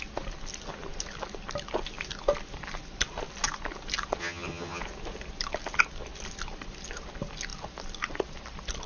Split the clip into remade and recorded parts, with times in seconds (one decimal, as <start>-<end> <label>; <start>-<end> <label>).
0.0-4.2 recorded; 4.2-4.8 remade; 4.8-8.9 recorded